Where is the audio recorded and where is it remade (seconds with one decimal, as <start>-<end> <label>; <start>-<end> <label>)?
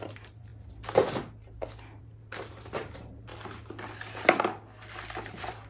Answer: 0.0-0.5 remade; 0.5-2.0 recorded; 2.0-3.3 remade; 3.3-5.1 recorded; 5.1-5.7 remade